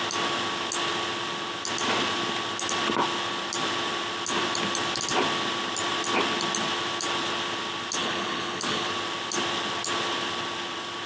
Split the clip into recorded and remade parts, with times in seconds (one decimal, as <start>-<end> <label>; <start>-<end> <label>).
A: 0.0-8.0 recorded; 8.0-8.9 remade; 8.9-11.1 recorded